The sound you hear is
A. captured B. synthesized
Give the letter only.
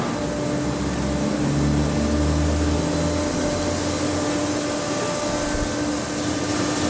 A